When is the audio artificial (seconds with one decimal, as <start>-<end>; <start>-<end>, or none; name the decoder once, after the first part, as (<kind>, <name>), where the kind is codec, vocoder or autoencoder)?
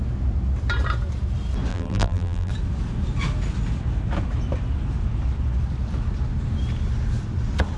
1.7-2.5 (vocoder, BigVGAN v2)